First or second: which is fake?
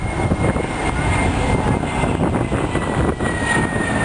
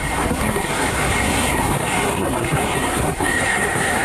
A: second